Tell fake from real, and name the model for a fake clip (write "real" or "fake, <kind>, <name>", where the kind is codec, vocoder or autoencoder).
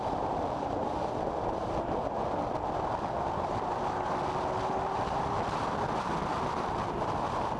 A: real